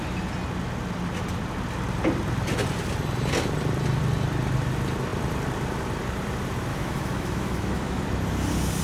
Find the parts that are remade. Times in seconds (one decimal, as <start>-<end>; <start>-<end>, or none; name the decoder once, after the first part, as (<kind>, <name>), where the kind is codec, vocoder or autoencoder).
6.7-8.0 (autoencoder, DAC-VAE)